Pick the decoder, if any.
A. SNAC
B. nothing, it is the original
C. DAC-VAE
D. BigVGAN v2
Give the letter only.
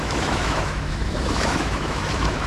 C